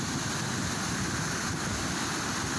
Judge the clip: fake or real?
real